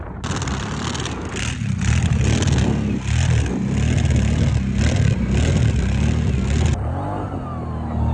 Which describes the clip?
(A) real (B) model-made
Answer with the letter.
A